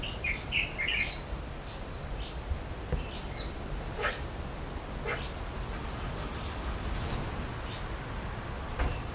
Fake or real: real